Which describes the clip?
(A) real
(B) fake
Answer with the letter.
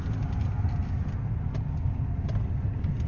A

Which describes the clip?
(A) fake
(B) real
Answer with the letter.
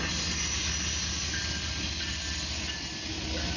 B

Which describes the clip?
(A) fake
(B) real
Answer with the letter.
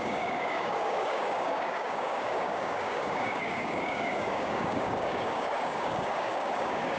A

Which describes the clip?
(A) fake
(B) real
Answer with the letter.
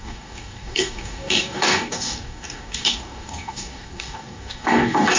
A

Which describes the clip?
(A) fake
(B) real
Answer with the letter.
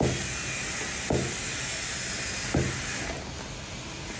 B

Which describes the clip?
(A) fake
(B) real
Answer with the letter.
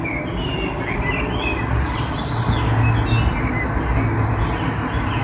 B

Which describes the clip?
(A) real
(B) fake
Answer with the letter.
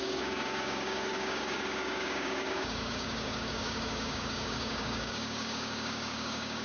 B